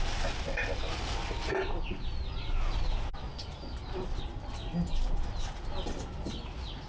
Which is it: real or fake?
real